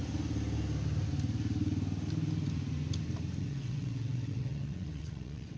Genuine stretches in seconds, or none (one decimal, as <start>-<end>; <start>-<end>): 0.0-3.4